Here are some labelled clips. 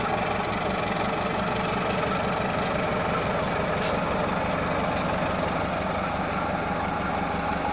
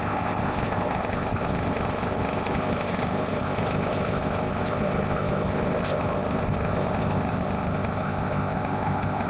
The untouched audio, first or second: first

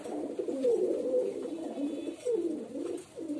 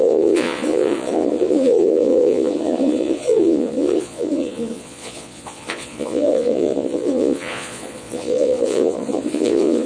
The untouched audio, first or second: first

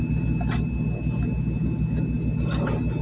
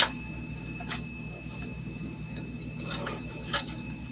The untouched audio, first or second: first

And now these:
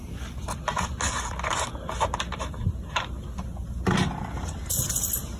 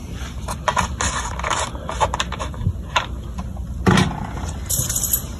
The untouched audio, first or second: first